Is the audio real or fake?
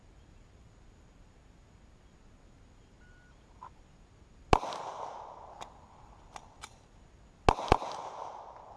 real